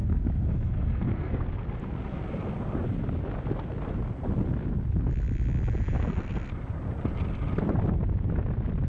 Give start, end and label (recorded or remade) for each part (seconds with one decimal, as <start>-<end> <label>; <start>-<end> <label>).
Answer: 0.0-1.4 remade; 1.4-8.9 recorded